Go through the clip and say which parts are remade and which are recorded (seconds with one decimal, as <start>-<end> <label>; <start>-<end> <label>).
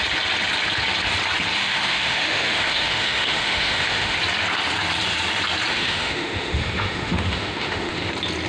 0.0-1.6 recorded; 1.6-4.2 remade; 4.2-5.7 recorded; 5.7-8.1 remade; 8.1-8.5 recorded